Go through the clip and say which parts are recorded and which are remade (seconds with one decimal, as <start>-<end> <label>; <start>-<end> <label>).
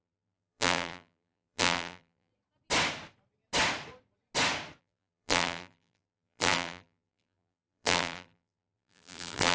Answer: 0.0-2.3 remade; 2.3-4.8 recorded; 4.8-9.5 remade